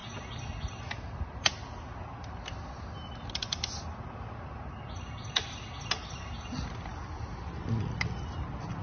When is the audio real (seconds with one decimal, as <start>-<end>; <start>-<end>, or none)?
0.0-8.8

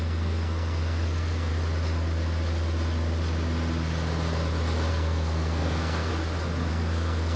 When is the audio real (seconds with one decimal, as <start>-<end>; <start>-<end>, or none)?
1.5-4.9; 6.1-6.7

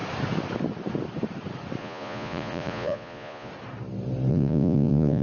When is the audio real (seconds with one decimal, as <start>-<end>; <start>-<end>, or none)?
0.0-1.8; 3.5-4.3

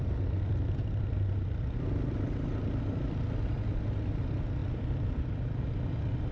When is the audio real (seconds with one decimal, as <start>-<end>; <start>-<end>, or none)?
0.0-4.6; 5.3-6.3

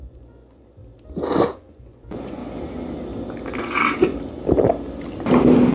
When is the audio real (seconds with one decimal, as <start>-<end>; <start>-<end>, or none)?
0.8-1.4; 2.4-3.6; 4.1-5.7

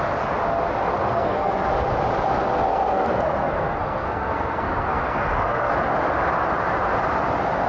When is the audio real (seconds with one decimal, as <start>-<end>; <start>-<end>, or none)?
0.0-0.9; 1.7-2.7; 5.7-7.7

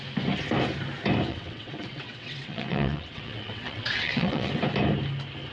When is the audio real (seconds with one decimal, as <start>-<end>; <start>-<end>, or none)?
0.0-1.3; 4.5-5.5

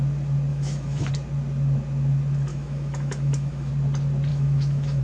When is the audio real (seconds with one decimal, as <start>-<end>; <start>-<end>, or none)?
0.0-0.5; 1.1-2.5; 3.7-4.3